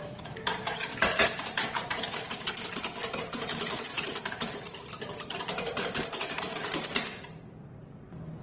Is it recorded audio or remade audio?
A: remade